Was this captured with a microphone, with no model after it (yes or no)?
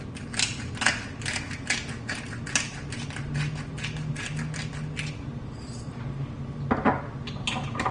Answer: yes